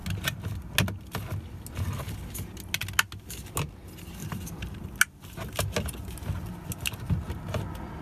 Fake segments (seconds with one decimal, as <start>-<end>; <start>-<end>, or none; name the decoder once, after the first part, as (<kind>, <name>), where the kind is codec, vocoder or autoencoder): 4.2-4.8 (vocoder, BigVGAN v2)